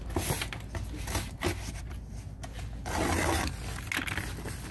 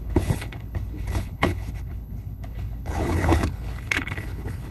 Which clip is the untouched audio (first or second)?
first